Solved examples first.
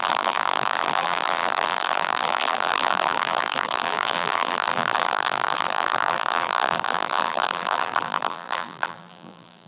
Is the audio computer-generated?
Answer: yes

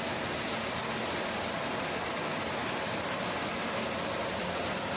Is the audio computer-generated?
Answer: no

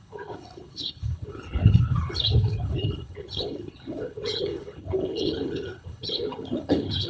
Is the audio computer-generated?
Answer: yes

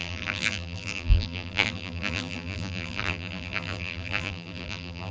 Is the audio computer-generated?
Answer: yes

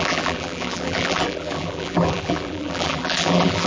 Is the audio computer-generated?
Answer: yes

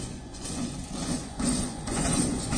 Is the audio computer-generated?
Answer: yes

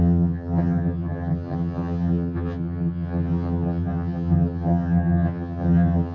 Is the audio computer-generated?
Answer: yes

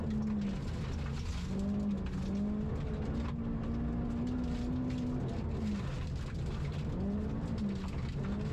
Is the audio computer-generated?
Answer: no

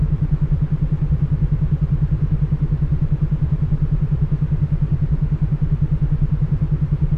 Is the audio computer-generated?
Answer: no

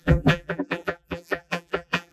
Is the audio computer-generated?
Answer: yes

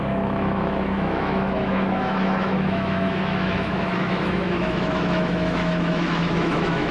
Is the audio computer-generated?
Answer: yes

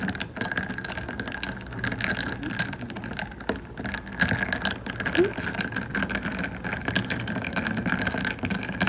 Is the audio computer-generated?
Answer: no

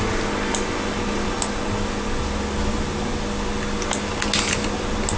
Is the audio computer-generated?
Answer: no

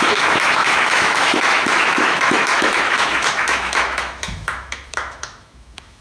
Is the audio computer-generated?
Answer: yes